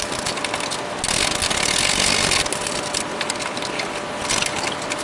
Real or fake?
real